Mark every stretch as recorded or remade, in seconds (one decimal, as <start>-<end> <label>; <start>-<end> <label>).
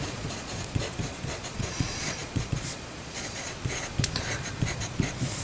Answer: 0.0-5.4 remade